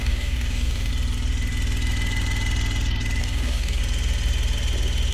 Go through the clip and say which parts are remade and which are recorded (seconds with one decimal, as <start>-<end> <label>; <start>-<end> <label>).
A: 0.0-0.9 remade; 0.9-3.2 recorded; 3.2-3.8 remade; 3.8-5.1 recorded